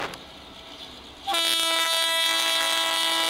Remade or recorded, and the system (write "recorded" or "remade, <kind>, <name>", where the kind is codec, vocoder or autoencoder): recorded